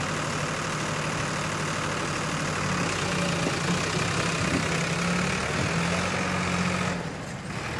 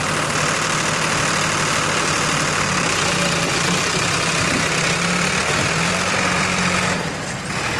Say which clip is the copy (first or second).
second